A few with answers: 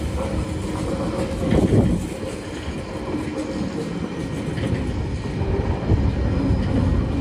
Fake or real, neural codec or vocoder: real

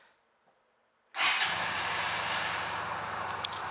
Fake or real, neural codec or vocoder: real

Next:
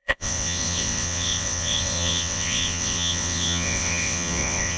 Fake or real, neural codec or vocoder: fake, vocoder, WaveNeXt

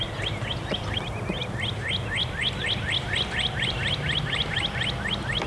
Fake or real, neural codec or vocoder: real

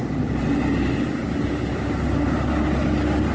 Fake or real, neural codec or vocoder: real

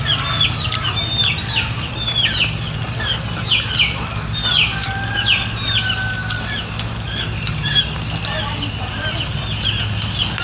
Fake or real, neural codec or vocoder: real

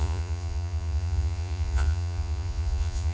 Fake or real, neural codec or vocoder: fake, vocoder, Vocos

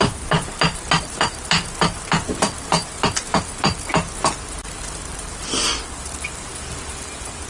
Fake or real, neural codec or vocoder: real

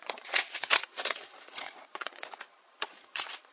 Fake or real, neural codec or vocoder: fake, vocoder, Vocos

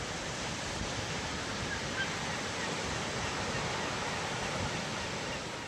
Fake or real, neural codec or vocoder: real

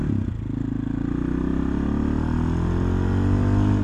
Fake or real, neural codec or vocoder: real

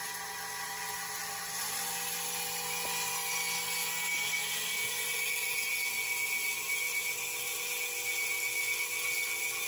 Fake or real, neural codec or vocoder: real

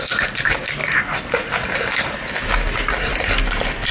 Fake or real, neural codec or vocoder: real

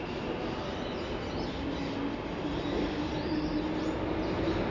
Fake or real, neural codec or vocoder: real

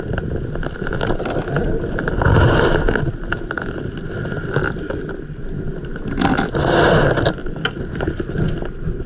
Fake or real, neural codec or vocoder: real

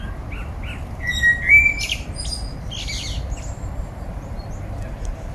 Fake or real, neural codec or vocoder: real